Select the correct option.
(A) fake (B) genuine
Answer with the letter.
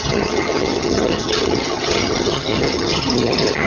A